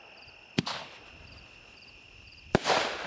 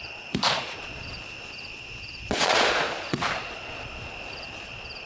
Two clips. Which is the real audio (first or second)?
first